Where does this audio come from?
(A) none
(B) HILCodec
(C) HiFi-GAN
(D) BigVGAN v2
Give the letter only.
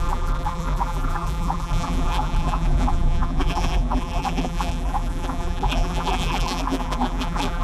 D